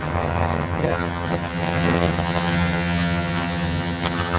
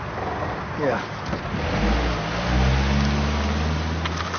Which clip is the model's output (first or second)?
first